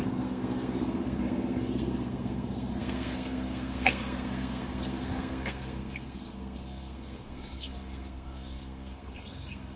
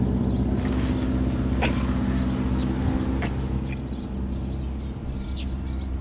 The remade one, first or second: first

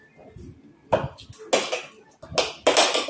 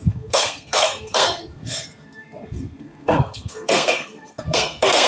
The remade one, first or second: second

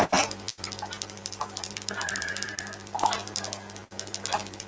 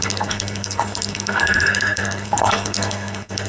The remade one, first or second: second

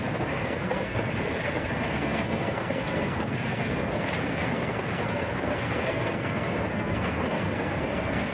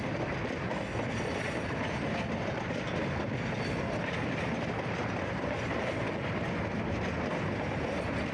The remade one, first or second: first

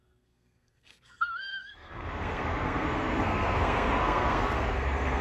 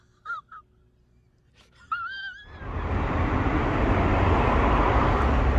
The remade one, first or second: first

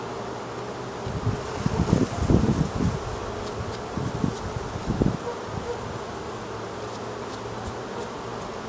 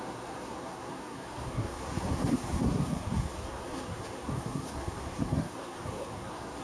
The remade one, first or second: second